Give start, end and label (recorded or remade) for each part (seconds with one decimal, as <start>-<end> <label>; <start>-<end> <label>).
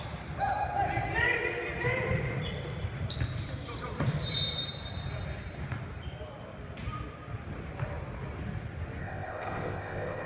0.0-9.0 recorded; 9.0-10.3 remade